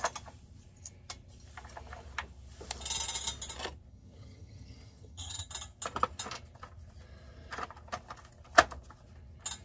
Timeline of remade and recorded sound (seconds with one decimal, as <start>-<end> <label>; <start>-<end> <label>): 0.0-3.9 recorded; 3.9-5.5 remade; 5.5-9.6 recorded